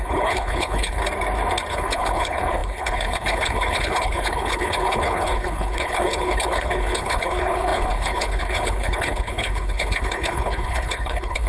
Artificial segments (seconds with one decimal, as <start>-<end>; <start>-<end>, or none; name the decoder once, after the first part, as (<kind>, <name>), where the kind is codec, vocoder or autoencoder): 0.0-1.0 (codec, HILCodec); 1.7-11.5